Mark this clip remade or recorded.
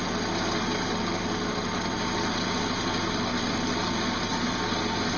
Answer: recorded